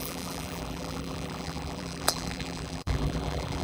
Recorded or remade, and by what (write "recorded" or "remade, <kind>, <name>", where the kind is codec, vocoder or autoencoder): remade, vocoder, BigVGAN v2